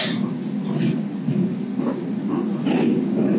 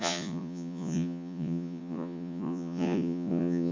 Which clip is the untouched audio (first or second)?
first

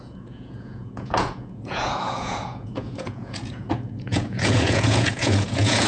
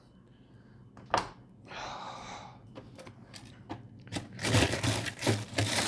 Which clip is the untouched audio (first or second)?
second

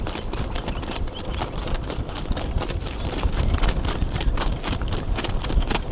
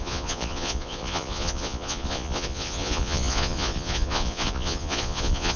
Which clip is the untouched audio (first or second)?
first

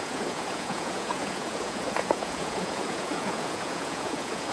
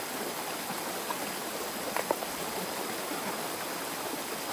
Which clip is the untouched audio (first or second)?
second